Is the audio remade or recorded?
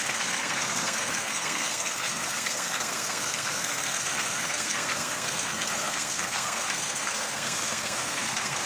remade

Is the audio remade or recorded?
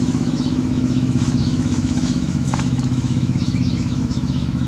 remade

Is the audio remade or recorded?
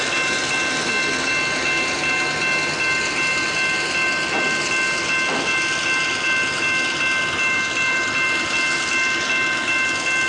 recorded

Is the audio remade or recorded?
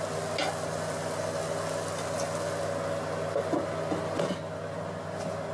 recorded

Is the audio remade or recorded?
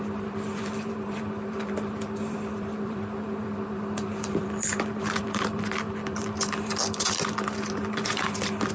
remade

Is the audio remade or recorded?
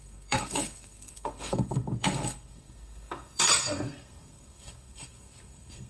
remade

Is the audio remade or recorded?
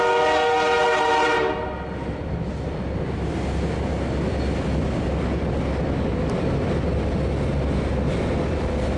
recorded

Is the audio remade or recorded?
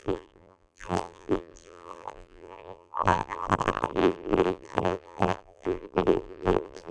remade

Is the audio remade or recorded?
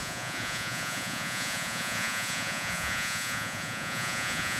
remade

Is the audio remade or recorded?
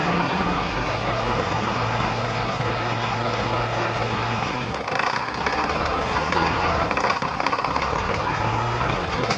remade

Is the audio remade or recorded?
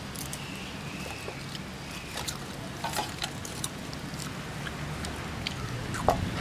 recorded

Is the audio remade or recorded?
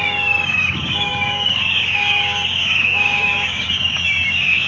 remade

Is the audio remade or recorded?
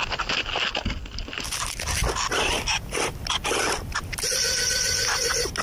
recorded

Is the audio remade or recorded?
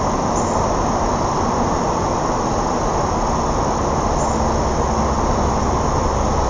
recorded